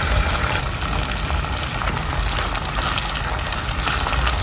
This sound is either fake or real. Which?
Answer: real